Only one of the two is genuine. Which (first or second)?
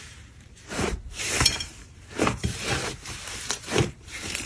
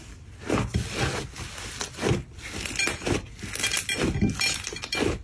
second